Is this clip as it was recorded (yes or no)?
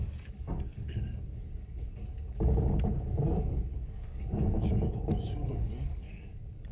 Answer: no